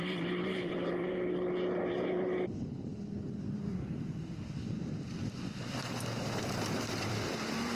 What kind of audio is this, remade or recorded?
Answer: remade